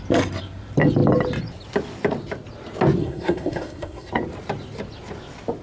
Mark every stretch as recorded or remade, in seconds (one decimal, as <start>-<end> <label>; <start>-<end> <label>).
0.0-3.0 recorded; 3.0-4.1 remade; 4.1-5.6 recorded